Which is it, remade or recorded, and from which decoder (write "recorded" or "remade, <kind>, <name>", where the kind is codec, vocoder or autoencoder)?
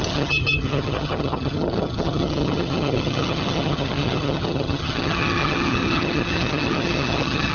remade, vocoder, HiFi-GAN